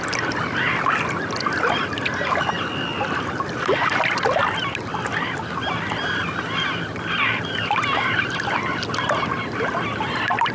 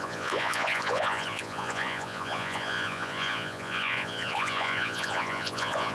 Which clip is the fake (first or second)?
second